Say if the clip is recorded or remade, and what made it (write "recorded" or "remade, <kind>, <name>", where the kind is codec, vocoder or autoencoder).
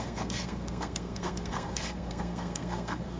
remade, codec, SNAC